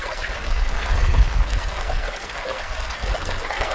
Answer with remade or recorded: remade